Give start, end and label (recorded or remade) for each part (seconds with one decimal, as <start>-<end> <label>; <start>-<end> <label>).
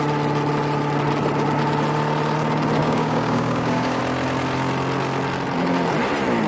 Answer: 0.0-2.8 recorded; 2.8-4.0 remade; 4.0-6.5 recorded